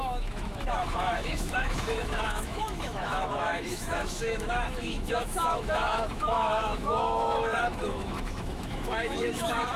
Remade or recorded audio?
remade